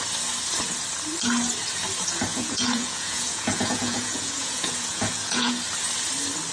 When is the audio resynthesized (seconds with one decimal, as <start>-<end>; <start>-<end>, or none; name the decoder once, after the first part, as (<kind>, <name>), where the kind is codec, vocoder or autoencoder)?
2.3-5.6 (vocoder, Vocos)